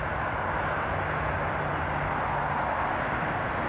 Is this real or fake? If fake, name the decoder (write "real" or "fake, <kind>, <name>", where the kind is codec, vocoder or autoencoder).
real